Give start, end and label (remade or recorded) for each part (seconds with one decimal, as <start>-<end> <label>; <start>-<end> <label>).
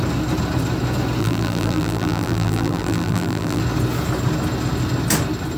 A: 0.0-1.2 recorded; 1.2-3.6 remade; 3.6-5.6 recorded